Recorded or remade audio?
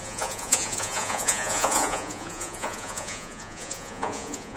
remade